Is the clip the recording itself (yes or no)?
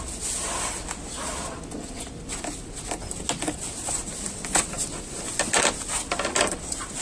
yes